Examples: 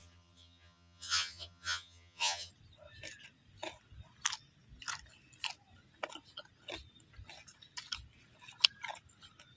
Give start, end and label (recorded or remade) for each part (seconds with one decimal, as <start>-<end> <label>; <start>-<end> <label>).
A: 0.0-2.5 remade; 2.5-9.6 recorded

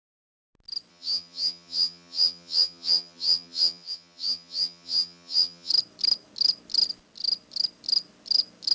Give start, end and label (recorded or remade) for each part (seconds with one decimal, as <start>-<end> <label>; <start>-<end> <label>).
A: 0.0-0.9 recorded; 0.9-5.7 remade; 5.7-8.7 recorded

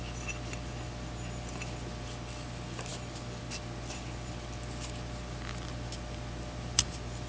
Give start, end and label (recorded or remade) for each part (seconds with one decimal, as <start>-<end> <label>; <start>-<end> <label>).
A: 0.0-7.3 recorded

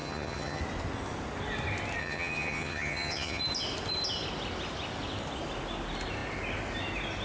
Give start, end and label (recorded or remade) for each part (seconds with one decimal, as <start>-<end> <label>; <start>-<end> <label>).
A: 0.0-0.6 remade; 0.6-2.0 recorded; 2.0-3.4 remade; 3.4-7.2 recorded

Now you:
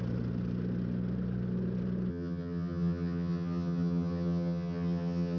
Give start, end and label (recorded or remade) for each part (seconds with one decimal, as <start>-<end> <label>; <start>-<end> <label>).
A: 0.0-2.1 recorded; 2.1-5.4 remade